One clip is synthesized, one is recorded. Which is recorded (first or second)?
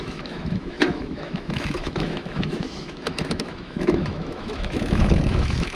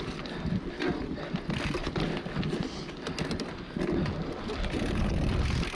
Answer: second